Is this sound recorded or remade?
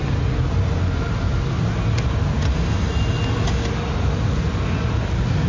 recorded